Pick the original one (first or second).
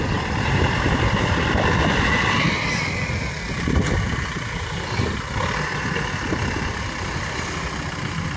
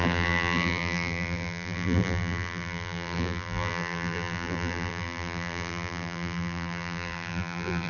first